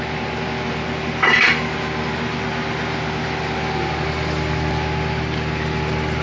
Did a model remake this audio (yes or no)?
no